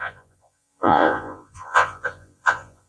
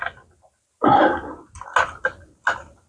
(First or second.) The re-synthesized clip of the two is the first